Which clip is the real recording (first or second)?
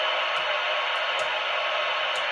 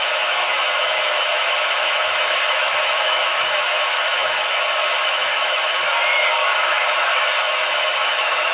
first